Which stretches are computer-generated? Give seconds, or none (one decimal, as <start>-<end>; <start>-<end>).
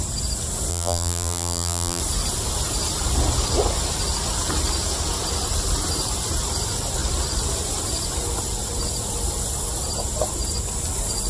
0.7-2.0